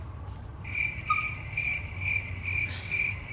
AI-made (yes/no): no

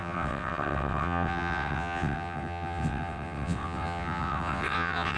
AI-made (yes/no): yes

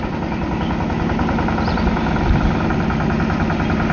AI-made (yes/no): no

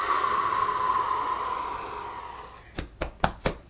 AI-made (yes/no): no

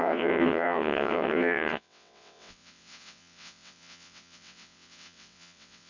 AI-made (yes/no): yes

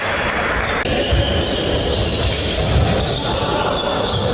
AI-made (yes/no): no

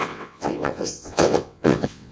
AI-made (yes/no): yes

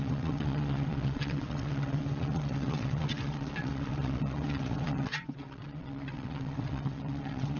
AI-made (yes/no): yes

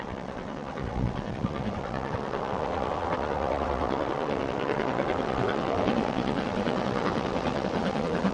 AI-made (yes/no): yes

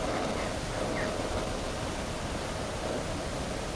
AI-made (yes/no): no